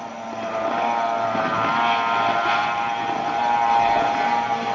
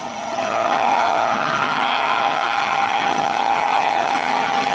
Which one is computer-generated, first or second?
second